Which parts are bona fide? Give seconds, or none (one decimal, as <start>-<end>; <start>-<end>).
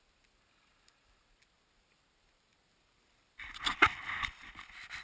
0.0-5.0